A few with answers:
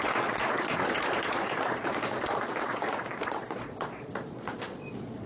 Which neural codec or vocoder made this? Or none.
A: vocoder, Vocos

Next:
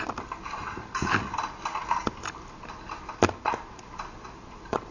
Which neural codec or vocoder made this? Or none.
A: none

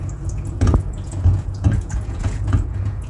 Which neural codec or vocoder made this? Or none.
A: vocoder, Vocos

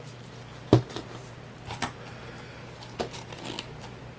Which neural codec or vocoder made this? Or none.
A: none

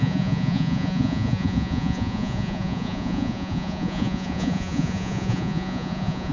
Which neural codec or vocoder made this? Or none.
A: vocoder, Vocos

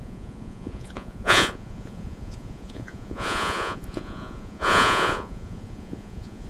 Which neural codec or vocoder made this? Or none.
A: vocoder, Vocos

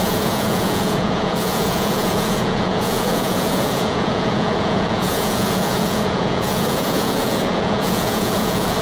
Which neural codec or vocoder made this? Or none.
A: vocoder, Vocos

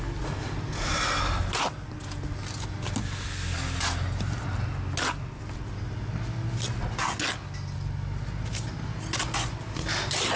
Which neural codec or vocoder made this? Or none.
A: none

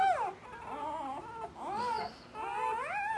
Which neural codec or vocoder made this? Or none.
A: none